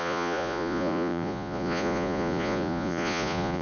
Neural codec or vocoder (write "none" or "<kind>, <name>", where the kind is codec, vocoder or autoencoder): vocoder, Vocos